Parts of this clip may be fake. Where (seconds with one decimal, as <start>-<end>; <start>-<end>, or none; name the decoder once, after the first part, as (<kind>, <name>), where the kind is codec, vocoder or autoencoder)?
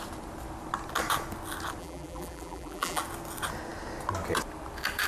1.8-3.0 (vocoder, BigVGAN v2)